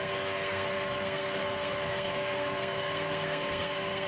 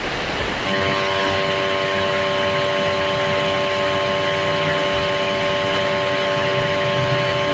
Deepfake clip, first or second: first